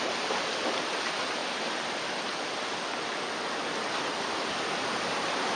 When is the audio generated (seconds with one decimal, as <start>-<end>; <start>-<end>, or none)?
1.4-3.2